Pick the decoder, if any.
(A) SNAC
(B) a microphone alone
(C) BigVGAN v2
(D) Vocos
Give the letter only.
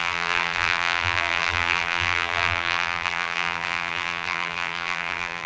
C